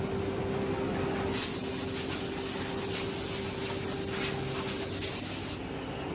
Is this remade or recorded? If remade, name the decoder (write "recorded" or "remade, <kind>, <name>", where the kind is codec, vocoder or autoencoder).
recorded